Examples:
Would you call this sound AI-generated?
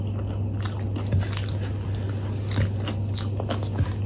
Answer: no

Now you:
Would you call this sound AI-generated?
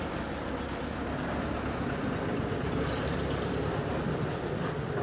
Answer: no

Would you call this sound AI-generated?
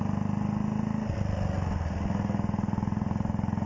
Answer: no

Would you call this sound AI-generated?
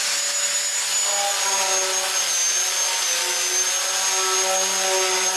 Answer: no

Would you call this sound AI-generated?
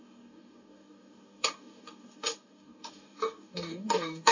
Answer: yes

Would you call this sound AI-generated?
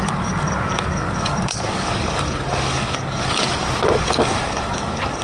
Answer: yes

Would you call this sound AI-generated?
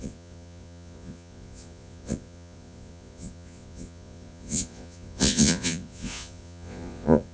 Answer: yes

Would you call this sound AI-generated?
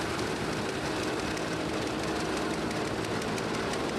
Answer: no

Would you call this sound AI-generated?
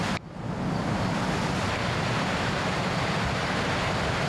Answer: no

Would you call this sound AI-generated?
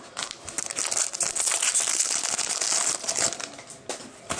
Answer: no